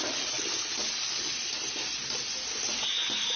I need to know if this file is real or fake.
real